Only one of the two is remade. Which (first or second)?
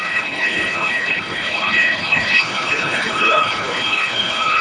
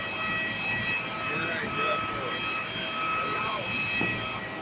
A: first